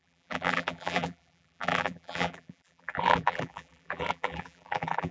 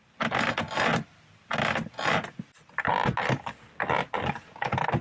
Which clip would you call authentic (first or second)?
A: second